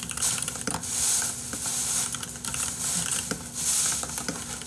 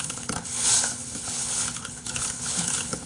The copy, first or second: second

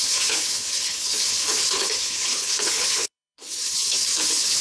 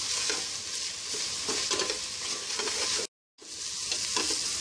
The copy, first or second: first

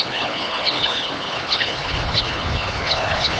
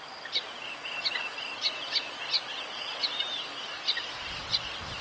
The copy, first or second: first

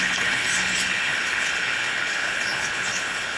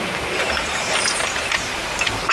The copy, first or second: first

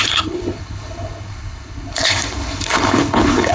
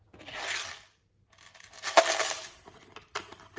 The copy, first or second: first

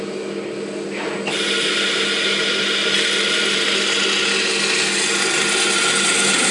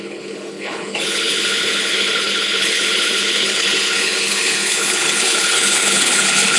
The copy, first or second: second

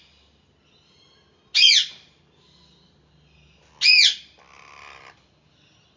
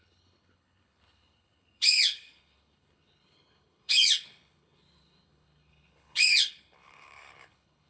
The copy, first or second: second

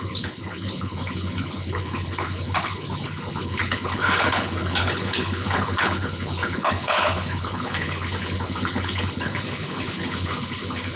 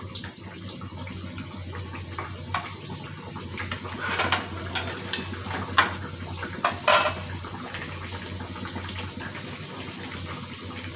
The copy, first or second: first